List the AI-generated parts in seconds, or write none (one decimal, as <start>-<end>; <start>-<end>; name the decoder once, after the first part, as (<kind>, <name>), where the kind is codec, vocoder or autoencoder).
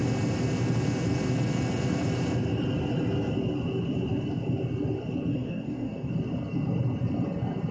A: 5.3-6.1 (codec, DAC)